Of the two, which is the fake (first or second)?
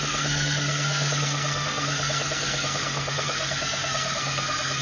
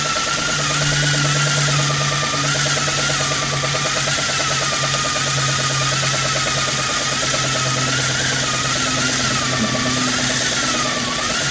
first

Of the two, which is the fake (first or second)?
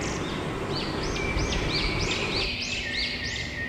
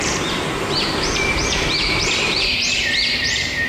second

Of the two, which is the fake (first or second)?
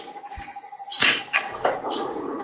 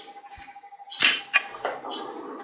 first